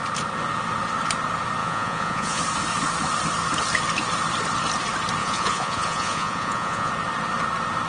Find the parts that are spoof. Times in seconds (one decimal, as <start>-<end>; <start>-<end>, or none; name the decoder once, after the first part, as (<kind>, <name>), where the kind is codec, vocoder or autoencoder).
1.6-2.4 (vocoder, Vocos); 5.2-6.9